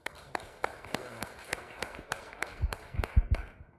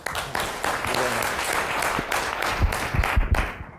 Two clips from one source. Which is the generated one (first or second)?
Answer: first